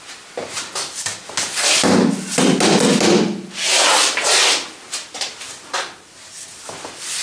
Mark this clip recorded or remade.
recorded